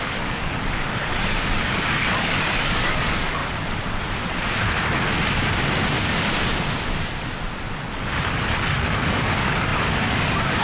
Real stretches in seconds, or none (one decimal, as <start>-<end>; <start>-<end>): 3.4-7.9